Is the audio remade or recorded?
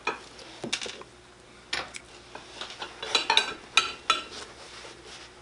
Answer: recorded